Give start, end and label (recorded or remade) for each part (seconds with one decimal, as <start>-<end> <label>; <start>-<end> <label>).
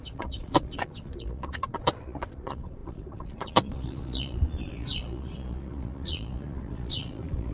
0.0-7.5 remade